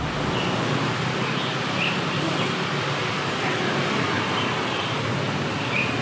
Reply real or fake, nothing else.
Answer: real